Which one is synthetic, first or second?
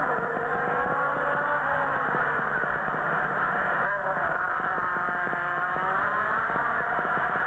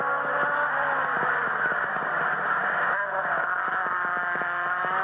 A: first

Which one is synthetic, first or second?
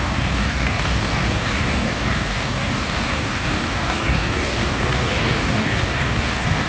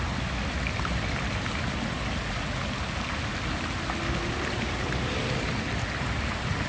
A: first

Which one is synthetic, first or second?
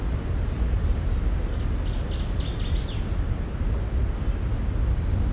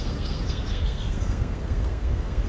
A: second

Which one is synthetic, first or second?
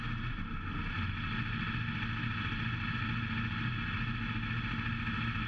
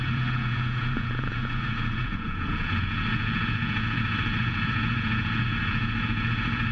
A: second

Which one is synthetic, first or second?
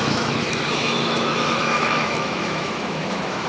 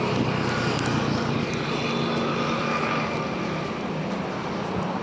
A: first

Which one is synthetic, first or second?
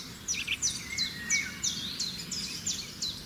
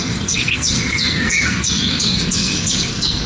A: second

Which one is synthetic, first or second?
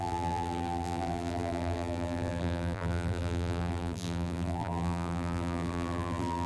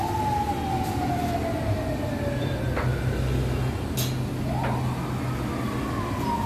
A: first